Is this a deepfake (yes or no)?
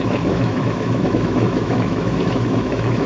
yes